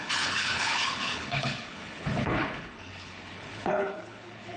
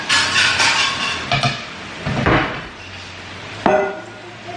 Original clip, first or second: second